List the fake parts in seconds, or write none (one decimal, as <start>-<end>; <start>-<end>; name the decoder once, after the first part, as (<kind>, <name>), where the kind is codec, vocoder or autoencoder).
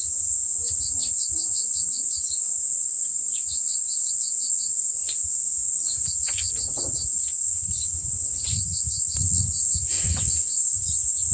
0.0-11.3 (vocoder, Vocos)